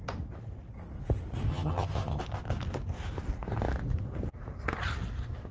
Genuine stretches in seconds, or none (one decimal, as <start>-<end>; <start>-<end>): 0.0-1.5; 2.2-5.5